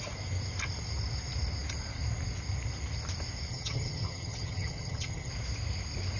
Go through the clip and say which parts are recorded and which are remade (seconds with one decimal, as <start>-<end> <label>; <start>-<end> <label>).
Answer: 0.0-3.5 recorded; 3.5-5.3 remade; 5.3-6.2 recorded

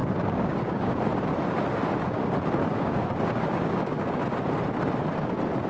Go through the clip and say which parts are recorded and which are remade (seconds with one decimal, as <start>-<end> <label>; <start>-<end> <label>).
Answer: 0.0-1.0 remade; 1.0-2.6 recorded; 2.6-4.2 remade; 4.2-5.7 recorded

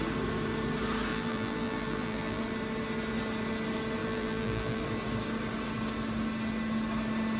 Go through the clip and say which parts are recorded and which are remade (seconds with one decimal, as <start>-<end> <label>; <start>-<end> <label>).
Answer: 0.0-1.1 recorded; 1.1-2.4 remade; 2.4-4.0 recorded; 4.0-4.8 remade; 4.8-7.4 recorded

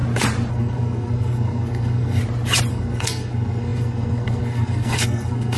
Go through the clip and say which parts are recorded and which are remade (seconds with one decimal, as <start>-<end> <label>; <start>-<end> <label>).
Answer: 0.0-0.5 recorded; 0.5-2.2 remade; 2.2-2.7 recorded; 2.7-5.6 remade